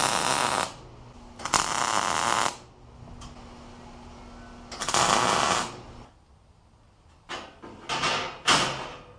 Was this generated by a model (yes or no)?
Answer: no